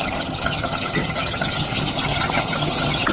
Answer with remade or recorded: remade